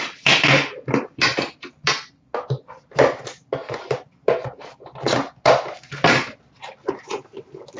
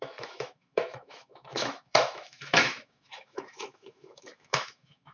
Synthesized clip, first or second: second